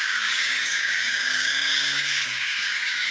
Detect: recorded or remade remade